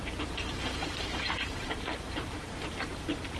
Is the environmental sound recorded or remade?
remade